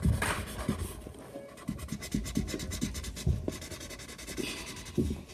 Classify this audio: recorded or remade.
recorded